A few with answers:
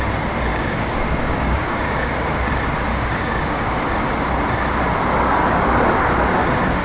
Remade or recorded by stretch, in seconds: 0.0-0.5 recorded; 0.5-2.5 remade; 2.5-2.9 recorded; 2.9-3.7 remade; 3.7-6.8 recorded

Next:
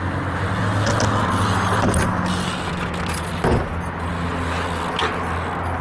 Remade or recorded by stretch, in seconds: 0.0-5.8 recorded

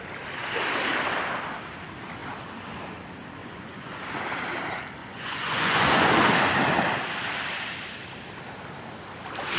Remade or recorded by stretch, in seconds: 0.0-3.4 recorded; 3.4-4.0 remade; 4.0-5.0 recorded; 5.0-6.1 remade; 6.1-9.6 recorded

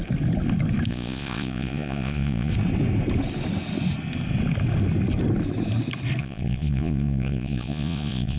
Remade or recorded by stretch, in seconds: 0.0-0.9 recorded; 0.9-2.5 remade; 2.5-6.2 recorded; 6.2-8.4 remade

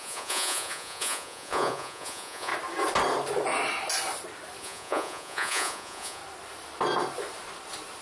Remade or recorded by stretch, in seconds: 0.0-2.5 remade; 2.5-4.6 recorded; 4.6-6.2 remade; 6.2-8.0 recorded

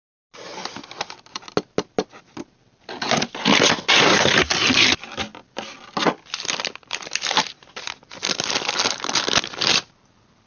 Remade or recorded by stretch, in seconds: 0.0-10.5 recorded

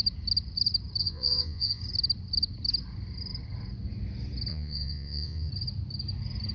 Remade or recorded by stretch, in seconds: 0.0-1.0 recorded; 1.0-1.8 remade; 1.8-4.5 recorded; 4.5-5.5 remade; 5.5-6.5 recorded